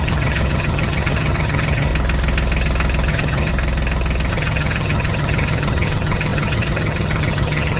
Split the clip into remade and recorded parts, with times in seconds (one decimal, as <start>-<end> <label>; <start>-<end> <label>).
0.0-1.9 remade; 1.9-3.1 recorded; 3.1-3.5 remade; 3.5-4.3 recorded; 4.3-7.8 remade